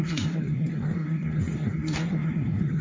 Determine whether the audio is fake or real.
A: fake